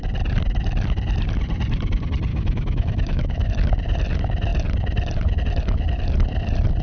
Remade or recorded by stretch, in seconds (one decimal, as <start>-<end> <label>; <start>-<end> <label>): 0.0-2.3 recorded; 2.3-3.5 remade; 3.5-6.8 recorded